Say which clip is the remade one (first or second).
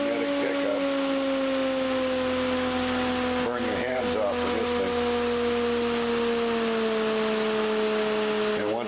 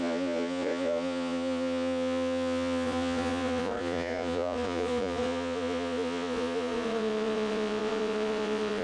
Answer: second